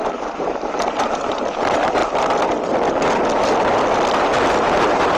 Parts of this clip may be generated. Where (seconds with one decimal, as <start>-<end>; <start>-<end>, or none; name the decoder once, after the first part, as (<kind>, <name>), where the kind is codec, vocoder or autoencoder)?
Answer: 0.0-2.0 (vocoder, BigVGAN v2); 4.4-5.2